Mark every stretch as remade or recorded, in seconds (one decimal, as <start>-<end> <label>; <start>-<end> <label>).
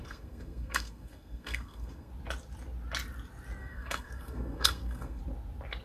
0.0-2.1 remade; 2.1-3.6 recorded; 3.6-5.2 remade; 5.2-5.8 recorded